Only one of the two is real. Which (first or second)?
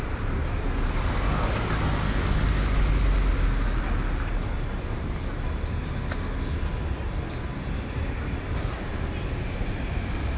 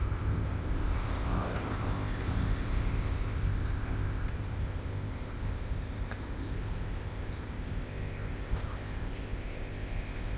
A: first